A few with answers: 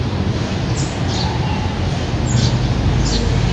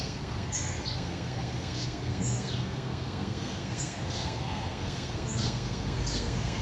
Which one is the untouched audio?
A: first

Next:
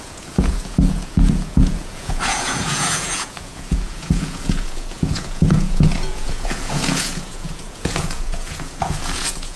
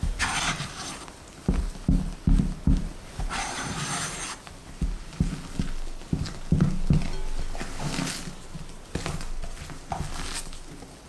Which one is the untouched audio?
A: second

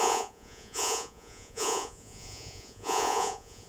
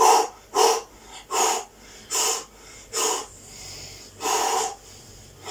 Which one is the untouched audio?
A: second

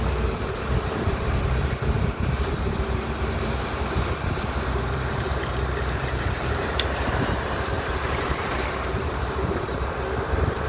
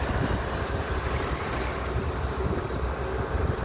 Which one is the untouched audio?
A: second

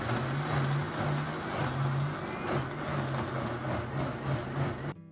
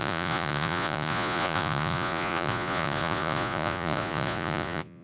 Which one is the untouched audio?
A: first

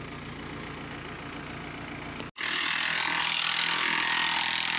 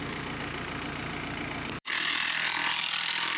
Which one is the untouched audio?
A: first